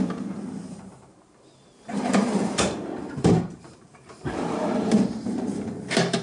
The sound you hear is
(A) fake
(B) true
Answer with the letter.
A